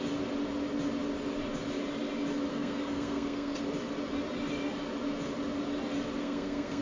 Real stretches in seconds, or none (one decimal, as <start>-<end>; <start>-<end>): 0.0-2.5; 3.6-6.2